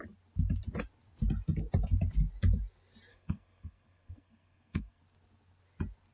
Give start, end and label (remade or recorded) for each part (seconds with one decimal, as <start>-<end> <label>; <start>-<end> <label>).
0.0-3.1 recorded; 3.1-5.0 remade; 5.0-6.1 recorded